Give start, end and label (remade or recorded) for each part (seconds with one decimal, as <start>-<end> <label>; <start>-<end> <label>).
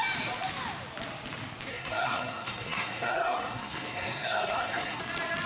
0.0-1.7 recorded; 1.7-5.0 remade; 5.0-5.5 recorded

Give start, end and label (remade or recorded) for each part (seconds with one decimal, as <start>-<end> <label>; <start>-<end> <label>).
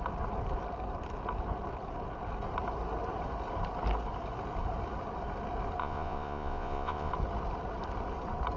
0.0-5.8 recorded; 5.8-7.1 remade; 7.1-8.6 recorded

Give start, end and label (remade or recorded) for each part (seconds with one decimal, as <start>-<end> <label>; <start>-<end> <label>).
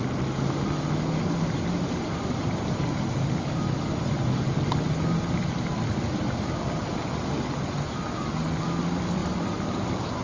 0.0-10.2 recorded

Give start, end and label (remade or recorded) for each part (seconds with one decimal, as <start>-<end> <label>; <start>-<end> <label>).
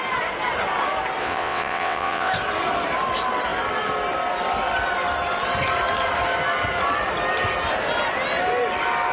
0.0-1.2 recorded; 1.2-2.3 remade; 2.3-9.1 recorded